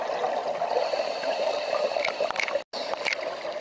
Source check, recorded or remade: recorded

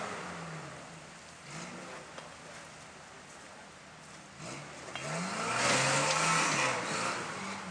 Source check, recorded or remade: recorded